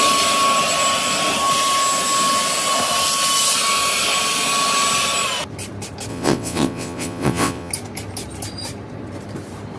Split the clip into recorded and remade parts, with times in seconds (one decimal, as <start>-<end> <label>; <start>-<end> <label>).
0.0-6.1 recorded; 6.1-7.7 remade; 7.7-9.8 recorded